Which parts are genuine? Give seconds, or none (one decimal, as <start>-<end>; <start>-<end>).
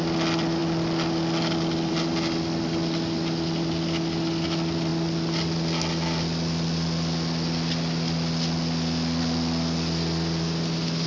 0.0-11.1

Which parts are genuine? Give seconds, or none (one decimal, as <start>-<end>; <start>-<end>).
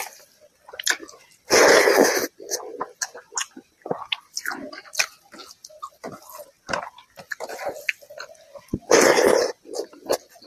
0.0-10.5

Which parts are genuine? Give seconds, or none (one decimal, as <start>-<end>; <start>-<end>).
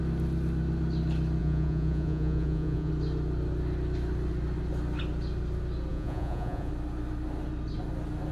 0.0-1.4; 2.9-5.9; 6.7-8.3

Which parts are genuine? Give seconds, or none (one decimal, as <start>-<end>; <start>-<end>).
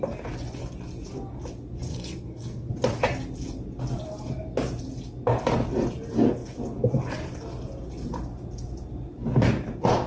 0.0-1.9; 2.7-10.1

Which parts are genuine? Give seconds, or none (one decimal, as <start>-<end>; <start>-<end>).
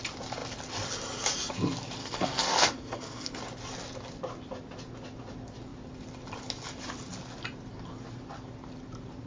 0.0-2.0; 3.4-9.3